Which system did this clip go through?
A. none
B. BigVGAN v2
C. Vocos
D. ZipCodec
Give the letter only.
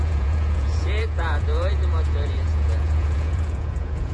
C